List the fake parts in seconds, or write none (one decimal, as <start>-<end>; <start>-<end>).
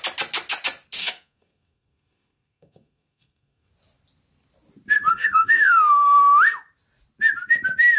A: 1.0-3.7; 5.1-6.2